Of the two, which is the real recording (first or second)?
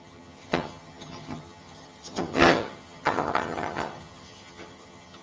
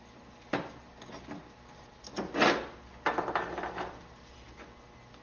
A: second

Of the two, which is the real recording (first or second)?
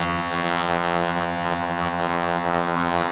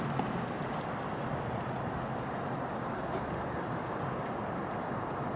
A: second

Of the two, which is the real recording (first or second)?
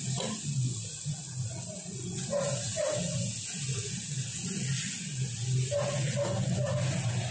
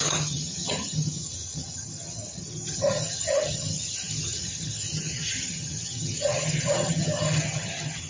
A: first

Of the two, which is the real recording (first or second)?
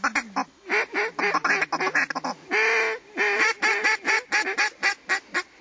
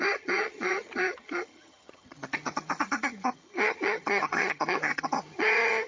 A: first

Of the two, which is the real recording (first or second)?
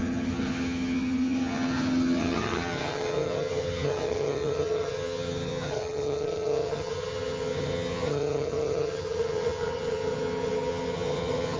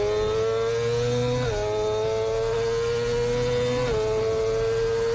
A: second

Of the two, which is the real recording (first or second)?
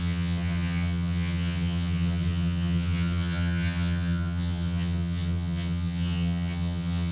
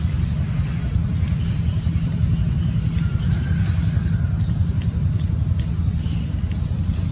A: second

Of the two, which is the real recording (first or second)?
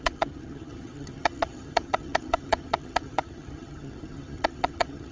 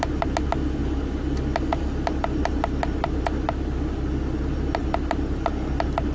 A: second